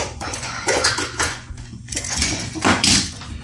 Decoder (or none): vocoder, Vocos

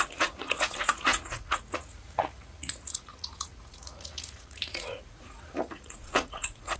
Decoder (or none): vocoder, Vocos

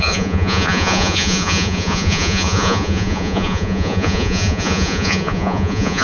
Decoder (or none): vocoder, Vocos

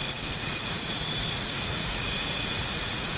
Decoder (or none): vocoder, Vocos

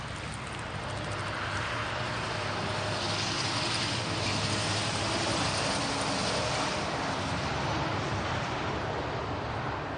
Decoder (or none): none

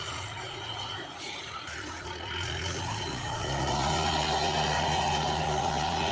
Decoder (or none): vocoder, Vocos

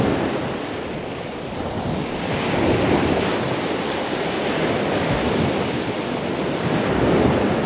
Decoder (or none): none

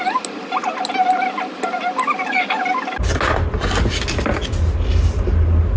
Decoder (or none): none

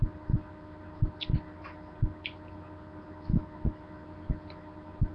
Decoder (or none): none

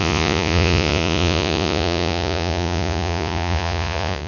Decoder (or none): vocoder, Vocos